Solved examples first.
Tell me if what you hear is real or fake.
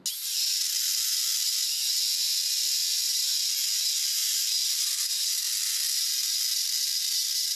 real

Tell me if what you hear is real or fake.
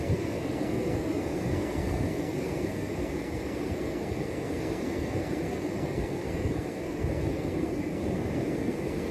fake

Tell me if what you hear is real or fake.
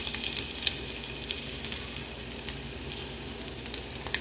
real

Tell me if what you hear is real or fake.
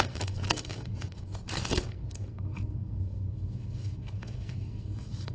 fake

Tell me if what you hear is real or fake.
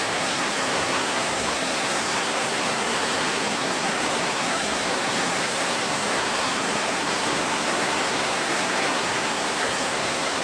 fake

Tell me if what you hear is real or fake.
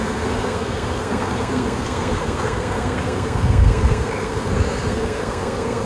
fake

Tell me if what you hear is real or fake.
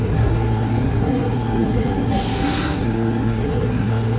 fake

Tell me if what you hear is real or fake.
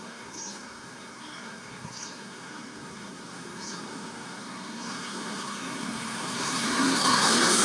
fake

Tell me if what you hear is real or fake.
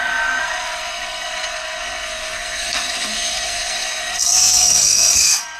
fake